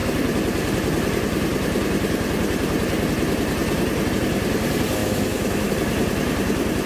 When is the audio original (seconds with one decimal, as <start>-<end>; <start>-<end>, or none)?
0.0-5.0; 5.7-6.9